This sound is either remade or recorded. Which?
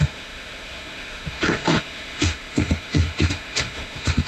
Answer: remade